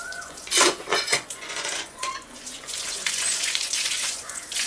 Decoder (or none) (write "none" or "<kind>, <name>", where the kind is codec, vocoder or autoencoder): vocoder, Vocos